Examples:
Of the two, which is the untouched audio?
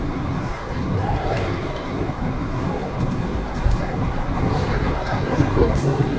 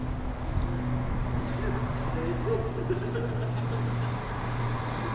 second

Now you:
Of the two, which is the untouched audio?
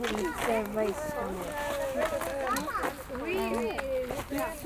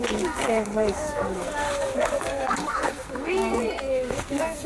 first